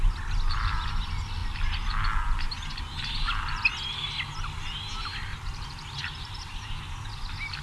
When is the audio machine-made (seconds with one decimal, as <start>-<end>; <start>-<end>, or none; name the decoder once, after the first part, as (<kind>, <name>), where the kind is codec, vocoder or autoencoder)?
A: 5.3-6.8 (vocoder, BigVGAN v2)